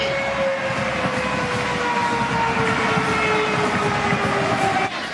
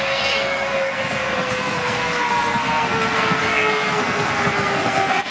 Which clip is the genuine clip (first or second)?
first